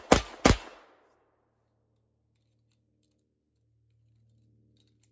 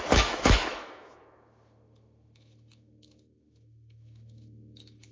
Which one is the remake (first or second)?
second